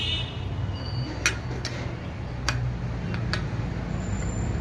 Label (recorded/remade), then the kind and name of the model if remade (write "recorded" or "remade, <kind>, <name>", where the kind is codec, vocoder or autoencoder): recorded